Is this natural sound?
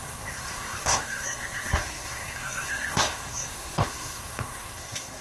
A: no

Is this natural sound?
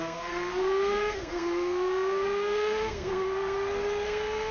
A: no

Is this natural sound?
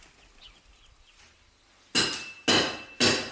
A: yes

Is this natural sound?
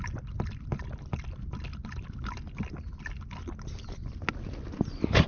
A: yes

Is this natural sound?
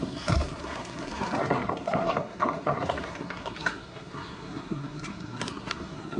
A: no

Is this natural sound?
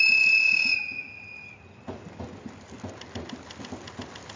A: yes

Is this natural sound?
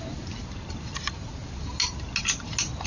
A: yes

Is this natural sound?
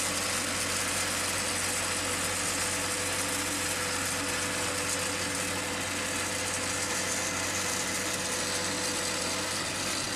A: yes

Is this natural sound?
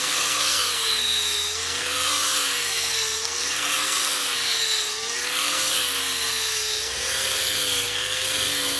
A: no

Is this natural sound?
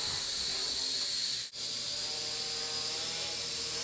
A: yes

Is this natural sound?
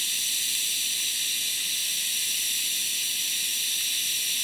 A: yes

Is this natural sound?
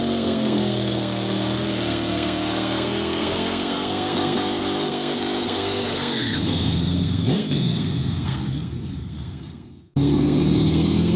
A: no